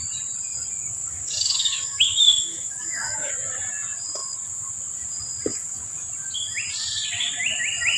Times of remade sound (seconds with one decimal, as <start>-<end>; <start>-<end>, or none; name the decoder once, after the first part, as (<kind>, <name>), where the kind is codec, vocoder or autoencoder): 0.8-3.3 (codec, DAC); 5.5-6.1